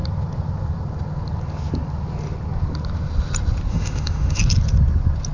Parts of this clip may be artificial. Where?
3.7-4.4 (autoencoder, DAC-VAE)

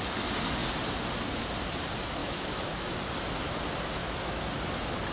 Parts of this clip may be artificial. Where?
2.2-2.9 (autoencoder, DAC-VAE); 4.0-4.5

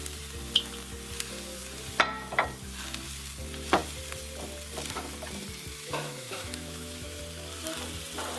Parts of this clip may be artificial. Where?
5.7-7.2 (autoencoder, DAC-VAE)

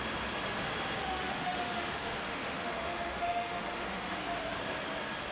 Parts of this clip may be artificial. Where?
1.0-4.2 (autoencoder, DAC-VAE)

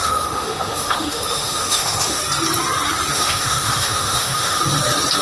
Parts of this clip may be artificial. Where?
0.0-2.2 (autoencoder, DAC-VAE); 3.1-4.6